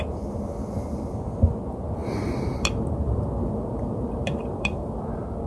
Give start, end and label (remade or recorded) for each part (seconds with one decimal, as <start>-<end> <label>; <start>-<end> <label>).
0.0-2.0 recorded; 2.0-5.0 remade; 5.0-5.5 recorded

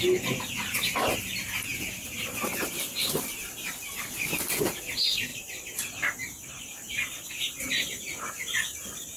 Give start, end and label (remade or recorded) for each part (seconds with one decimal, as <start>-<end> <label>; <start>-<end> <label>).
0.0-1.7 recorded; 1.7-2.3 remade; 2.3-9.2 recorded